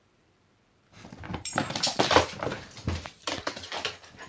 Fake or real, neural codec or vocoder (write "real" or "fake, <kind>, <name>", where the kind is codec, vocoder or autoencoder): fake, vocoder, BigVGAN v2